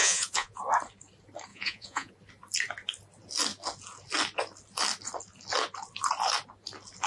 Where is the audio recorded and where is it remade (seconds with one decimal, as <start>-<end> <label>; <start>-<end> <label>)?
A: 0.0-0.6 remade; 0.6-1.5 recorded; 1.5-2.1 remade; 2.1-7.1 recorded